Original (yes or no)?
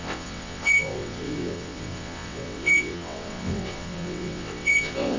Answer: no